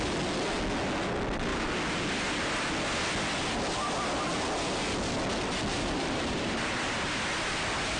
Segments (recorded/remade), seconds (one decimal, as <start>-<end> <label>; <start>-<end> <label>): 0.0-5.7 recorded; 5.7-6.9 remade; 6.9-8.0 recorded